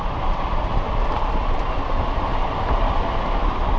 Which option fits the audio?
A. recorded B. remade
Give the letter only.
A